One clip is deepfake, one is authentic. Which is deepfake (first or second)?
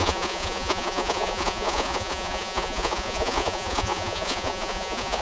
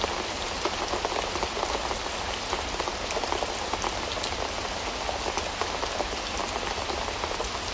first